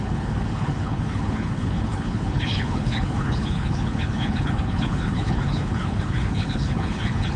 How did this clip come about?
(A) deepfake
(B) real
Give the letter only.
A